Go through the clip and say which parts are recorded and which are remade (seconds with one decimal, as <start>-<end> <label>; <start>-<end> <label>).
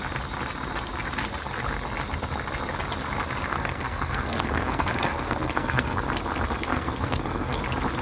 0.0-3.5 recorded; 3.5-6.1 remade; 6.1-6.7 recorded; 6.7-7.6 remade; 7.6-8.0 recorded